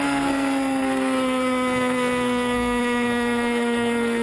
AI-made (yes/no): yes